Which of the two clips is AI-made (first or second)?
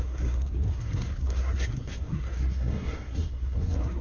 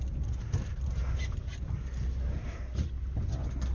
first